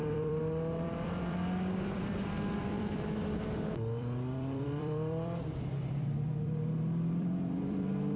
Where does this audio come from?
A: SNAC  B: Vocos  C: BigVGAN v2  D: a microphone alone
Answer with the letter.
C